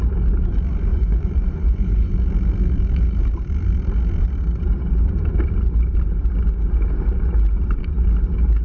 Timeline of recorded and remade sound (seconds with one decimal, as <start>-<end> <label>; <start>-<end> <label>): 0.0-0.9 recorded; 0.9-2.1 remade; 2.1-8.6 recorded